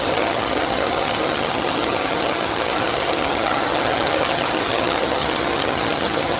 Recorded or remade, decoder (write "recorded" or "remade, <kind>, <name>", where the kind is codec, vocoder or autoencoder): remade, vocoder, HiFi-GAN